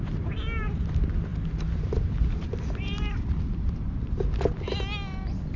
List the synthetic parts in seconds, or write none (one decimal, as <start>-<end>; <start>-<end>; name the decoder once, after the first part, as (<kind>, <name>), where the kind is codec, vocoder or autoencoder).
none